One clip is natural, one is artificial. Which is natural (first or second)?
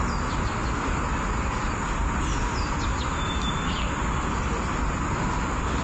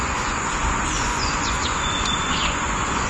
first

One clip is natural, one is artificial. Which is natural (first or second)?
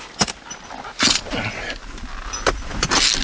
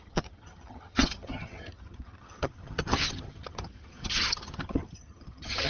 first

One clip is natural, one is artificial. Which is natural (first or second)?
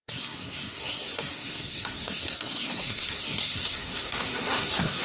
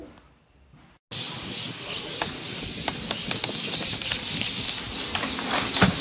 second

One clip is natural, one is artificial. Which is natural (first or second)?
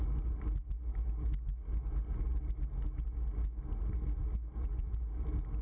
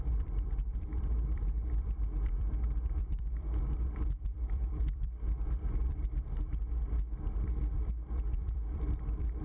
first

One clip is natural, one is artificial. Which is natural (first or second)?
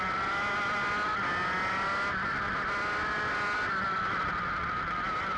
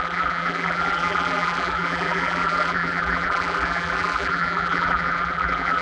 first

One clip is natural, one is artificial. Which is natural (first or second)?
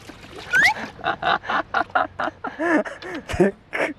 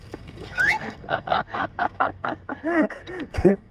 first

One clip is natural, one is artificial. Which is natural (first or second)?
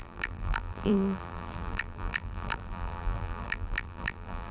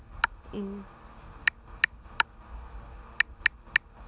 second